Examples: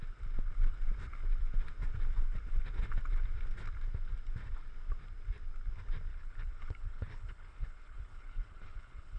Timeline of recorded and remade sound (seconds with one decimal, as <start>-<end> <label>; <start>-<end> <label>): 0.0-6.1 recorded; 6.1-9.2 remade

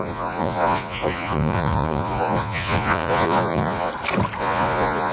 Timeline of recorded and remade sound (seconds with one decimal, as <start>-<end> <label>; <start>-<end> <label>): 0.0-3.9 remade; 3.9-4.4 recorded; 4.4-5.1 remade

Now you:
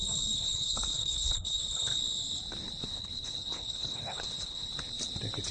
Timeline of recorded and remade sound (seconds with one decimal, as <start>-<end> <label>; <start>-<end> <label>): 0.0-1.9 remade; 1.9-2.8 recorded; 2.8-4.7 remade; 4.7-5.5 recorded

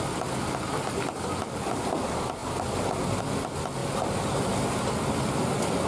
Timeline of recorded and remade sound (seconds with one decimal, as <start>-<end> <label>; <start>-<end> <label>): 0.0-5.9 recorded